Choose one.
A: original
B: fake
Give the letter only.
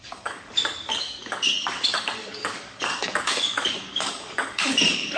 B